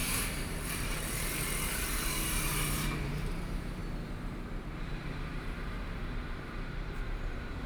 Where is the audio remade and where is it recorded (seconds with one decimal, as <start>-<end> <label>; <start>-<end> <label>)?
0.0-3.8 remade; 3.8-4.6 recorded; 4.6-7.7 remade